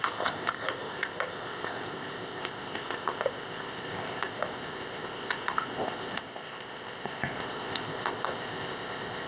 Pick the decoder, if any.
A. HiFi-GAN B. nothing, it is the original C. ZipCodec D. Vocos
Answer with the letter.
C